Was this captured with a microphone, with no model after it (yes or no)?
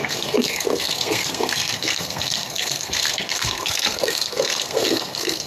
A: no